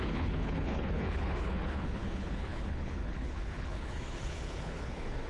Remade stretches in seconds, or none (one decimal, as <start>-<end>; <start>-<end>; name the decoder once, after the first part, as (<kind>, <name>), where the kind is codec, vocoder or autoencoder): 0.0-5.3 (codec, HILCodec)